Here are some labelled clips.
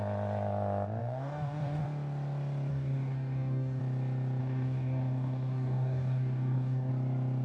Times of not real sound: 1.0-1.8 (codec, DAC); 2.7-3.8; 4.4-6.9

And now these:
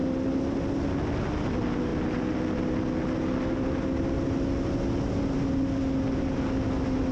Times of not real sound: none

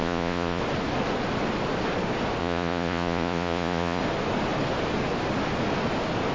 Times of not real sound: 0.0-0.6 (vocoder, Vocos); 2.4-4.0